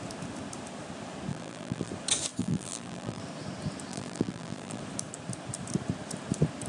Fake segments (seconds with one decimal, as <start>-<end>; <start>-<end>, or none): 1.3-1.9; 2.4-3.2; 3.9-4.8